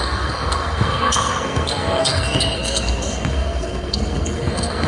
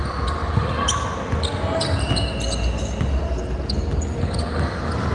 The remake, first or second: first